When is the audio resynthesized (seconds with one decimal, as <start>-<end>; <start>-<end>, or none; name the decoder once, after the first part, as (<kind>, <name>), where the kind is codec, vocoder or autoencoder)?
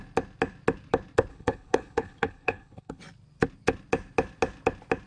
1.3-3.0 (codec, HILCodec)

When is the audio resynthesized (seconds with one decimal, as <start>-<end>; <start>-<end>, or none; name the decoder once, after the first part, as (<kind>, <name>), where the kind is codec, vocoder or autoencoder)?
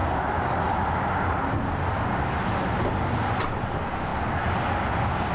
none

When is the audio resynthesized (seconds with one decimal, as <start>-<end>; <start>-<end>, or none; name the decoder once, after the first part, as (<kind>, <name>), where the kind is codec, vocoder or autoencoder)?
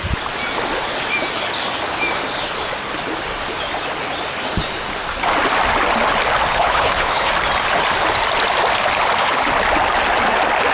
6.5-7.3 (codec, HILCodec)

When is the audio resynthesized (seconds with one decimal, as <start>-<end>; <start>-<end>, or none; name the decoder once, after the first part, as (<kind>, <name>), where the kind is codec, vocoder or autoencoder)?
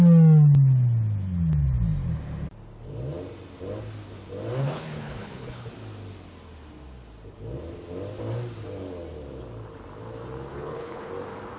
4.6-5.7 (codec, HILCodec); 10.5-11.1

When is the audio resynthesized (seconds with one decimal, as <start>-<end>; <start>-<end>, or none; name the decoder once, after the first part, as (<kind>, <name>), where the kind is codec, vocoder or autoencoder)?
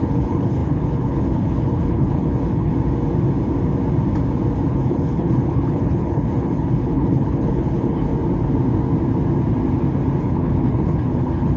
0.0-2.7 (codec, HILCodec); 4.7-8.1; 10.2-11.6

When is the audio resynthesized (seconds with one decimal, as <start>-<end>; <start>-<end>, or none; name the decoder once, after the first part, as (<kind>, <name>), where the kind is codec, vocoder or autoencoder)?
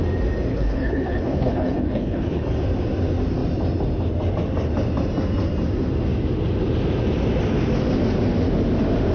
0.5-2.5 (codec, HILCodec)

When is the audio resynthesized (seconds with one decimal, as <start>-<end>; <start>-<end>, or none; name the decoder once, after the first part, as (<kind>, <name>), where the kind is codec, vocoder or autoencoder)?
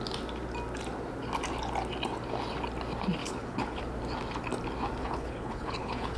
3.2-3.8 (codec, HILCodec); 5.0-6.2